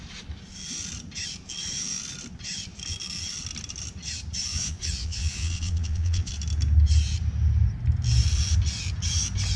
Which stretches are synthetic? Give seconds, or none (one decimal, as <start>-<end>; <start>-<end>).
4.5-6.3